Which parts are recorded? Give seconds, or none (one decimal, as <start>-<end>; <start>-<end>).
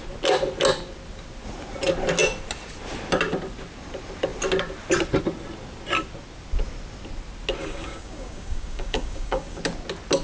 0.0-7.6; 9.6-10.2